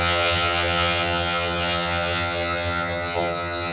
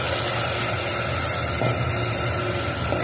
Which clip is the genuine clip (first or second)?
second